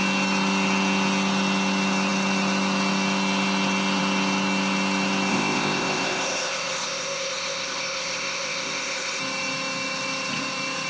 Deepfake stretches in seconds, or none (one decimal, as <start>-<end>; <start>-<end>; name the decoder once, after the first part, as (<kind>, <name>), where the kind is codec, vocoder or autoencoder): 5.3-9.2 (codec, ZipCodec)